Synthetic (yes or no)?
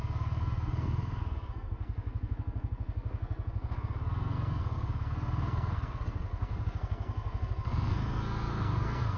yes